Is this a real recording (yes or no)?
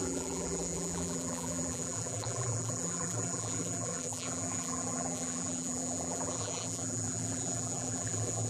no